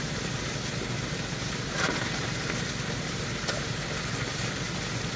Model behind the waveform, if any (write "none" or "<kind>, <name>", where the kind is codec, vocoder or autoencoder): none